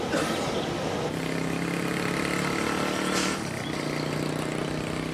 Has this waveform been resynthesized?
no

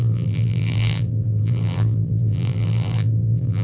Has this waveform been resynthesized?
yes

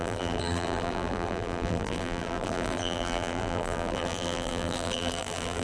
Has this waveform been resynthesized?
yes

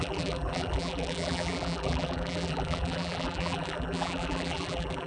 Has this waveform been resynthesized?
yes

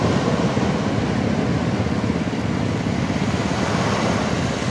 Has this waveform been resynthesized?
no